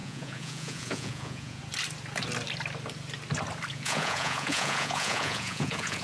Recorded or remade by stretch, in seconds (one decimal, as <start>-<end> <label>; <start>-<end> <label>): 0.0-1.6 remade; 1.6-3.7 recorded; 3.7-6.0 remade